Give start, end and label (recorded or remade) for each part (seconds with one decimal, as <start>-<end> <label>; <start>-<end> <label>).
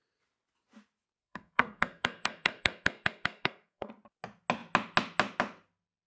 0.0-1.2 recorded; 1.2-3.9 remade; 3.9-6.1 recorded